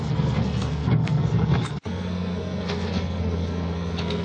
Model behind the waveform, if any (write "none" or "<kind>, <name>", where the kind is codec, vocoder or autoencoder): codec, SNAC